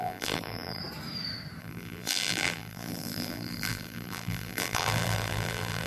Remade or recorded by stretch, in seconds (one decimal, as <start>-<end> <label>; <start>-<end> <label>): 0.0-0.8 remade; 0.8-1.6 recorded; 1.6-5.9 remade